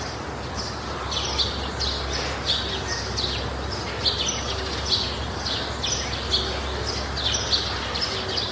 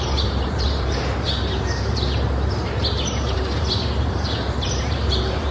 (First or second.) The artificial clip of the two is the second